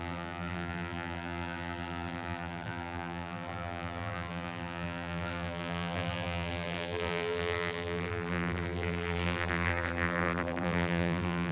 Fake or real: fake